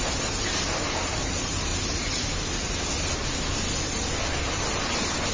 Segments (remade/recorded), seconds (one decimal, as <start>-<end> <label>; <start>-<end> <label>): 0.0-1.7 remade; 1.7-5.3 recorded